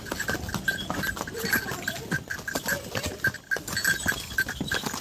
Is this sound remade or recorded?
recorded